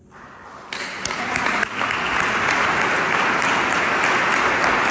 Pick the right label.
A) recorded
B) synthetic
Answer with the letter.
A